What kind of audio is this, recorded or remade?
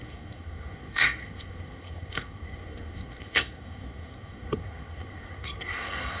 remade